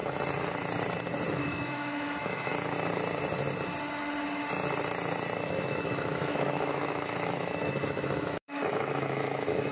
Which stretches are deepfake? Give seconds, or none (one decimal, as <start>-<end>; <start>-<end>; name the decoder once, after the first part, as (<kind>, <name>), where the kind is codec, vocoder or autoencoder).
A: 1.3-2.5 (autoencoder, DAC-VAE); 5.5-9.7